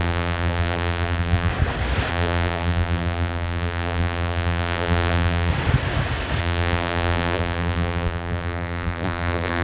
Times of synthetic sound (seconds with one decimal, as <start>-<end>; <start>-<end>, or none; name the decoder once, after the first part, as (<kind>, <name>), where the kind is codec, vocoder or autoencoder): 0.0-1.5 (vocoder, BigVGAN v2); 2.1-5.5; 6.4-9.6